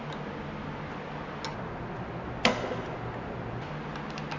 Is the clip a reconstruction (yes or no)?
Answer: no